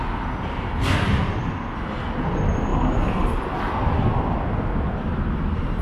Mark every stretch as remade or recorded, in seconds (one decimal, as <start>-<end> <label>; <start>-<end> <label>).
0.0-5.8 recorded